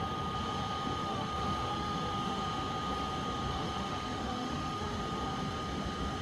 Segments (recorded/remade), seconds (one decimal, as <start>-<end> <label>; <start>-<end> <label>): 0.0-1.0 recorded; 1.0-2.4 remade; 2.4-3.5 recorded; 3.5-5.0 remade; 5.0-6.2 recorded